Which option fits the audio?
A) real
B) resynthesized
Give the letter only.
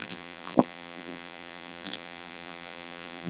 B